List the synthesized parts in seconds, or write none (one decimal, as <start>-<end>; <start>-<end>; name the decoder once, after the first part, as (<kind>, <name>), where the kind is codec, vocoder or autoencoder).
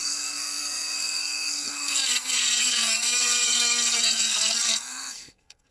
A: 0.0-5.7 (codec, SNAC)